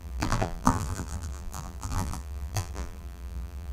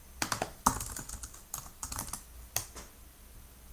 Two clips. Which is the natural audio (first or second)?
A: second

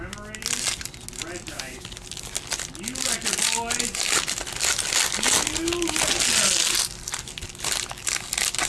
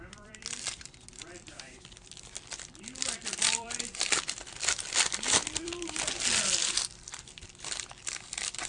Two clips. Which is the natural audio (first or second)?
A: first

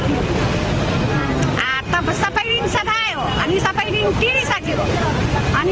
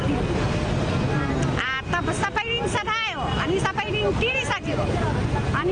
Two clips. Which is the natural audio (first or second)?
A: second